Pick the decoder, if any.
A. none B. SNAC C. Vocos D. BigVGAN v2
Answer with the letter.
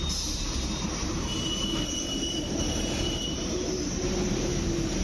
D